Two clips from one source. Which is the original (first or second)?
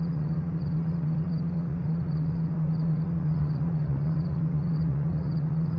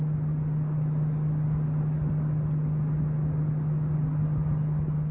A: second